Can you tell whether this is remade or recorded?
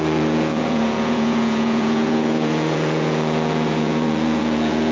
remade